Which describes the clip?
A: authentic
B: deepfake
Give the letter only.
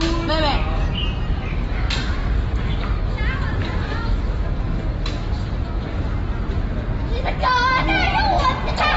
A